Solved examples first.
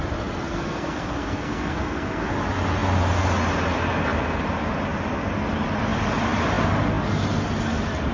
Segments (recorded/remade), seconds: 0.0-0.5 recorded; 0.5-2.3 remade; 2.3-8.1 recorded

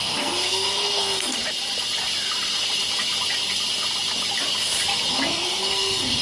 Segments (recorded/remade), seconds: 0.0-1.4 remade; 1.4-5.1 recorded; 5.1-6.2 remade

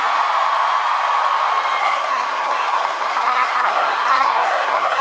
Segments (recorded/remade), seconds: 0.0-1.8 recorded; 1.8-5.0 remade

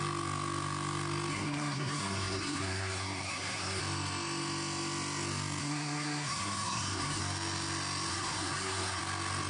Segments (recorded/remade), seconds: 0.0-1.3 recorded; 1.3-3.8 remade; 3.8-5.6 recorded; 5.6-7.2 remade; 7.2-8.1 recorded; 8.1-9.0 remade; 9.0-9.5 recorded